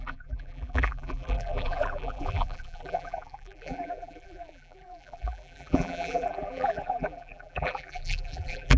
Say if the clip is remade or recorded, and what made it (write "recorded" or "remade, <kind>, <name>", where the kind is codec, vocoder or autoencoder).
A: remade, vocoder, BigVGAN v2